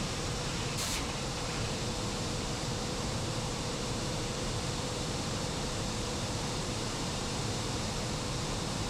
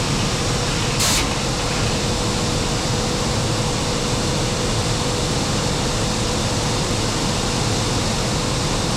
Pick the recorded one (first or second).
second